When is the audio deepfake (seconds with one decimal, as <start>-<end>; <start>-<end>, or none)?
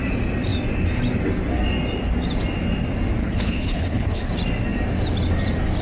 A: 3.2-4.3